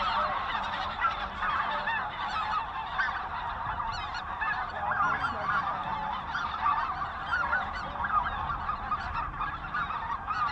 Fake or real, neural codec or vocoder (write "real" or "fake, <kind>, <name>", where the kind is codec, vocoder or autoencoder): fake, vocoder, BigVGAN v2